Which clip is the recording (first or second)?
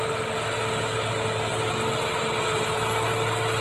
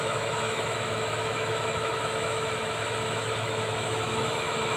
first